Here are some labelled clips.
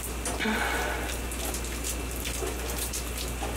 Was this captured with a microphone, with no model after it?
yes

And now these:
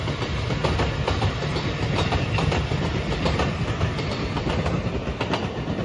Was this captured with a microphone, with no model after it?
yes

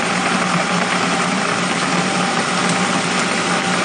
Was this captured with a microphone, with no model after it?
yes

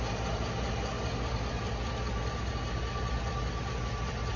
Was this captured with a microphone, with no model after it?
yes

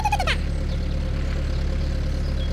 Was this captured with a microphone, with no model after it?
yes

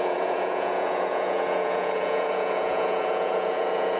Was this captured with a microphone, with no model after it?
no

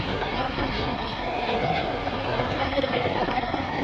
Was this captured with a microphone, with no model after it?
no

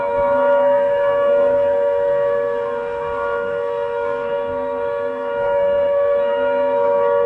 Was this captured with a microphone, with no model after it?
no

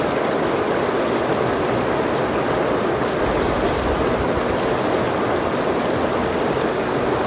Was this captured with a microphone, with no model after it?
yes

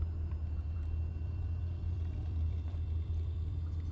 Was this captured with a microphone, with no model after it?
no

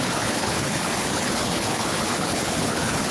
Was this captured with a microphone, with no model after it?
no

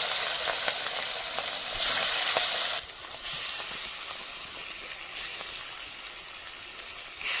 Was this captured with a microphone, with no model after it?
yes